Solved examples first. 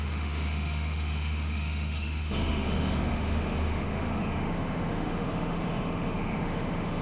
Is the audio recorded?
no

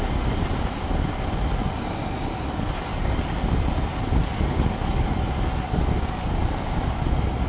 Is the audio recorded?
yes